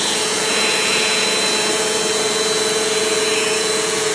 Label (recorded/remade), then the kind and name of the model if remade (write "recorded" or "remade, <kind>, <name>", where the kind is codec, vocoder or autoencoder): remade, vocoder, Vocos